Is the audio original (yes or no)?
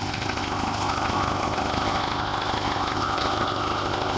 no